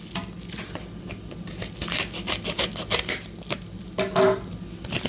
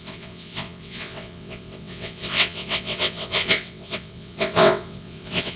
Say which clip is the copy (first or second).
second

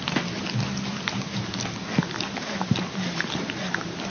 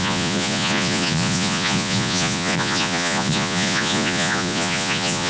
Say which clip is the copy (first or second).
second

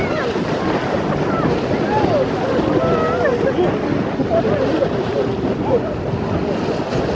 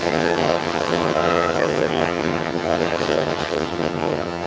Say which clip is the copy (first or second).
second